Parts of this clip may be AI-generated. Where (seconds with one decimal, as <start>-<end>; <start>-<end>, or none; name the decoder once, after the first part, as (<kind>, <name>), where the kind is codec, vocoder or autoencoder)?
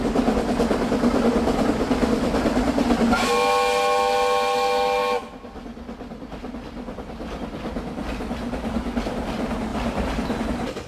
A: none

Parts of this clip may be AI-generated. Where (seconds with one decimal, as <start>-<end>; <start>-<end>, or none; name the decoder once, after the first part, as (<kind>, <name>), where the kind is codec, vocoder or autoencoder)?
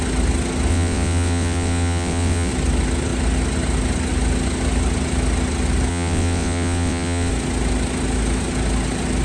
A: 0.7-2.5 (vocoder, WaveNeXt); 5.9-7.3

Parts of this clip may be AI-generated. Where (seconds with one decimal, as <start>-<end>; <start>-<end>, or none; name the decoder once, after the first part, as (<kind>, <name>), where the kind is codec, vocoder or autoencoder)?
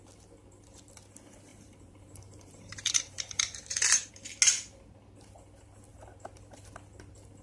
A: 1.5-4.1 (vocoder, BigVGAN v2); 5.9-6.6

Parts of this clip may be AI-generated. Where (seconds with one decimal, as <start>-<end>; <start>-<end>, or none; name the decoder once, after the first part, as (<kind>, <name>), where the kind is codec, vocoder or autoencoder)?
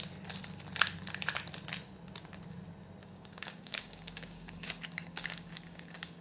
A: 3.0-6.2 (codec, DAC)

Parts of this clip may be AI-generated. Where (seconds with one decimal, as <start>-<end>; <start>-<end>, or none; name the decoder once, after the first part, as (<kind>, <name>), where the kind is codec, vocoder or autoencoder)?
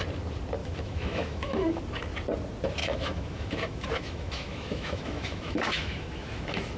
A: 0.6-1.8 (autoencoder, DAC-VAE); 2.8-6.8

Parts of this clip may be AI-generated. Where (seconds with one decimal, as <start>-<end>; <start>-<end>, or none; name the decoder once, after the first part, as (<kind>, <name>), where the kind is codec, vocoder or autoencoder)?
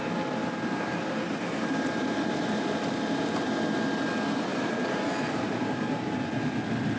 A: 0.4-3.4 (vocoder, BigVGAN v2); 4.5-6.3